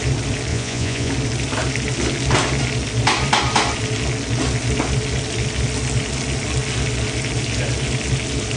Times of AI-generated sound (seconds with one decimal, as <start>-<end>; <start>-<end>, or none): 0.5-1.1